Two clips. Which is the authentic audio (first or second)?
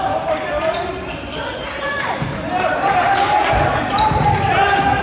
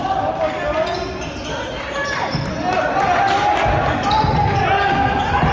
second